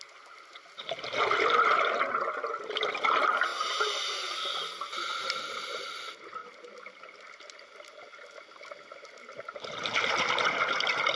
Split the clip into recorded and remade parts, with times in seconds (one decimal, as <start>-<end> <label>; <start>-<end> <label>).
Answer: 0.0-11.2 recorded